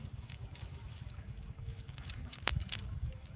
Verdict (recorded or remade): remade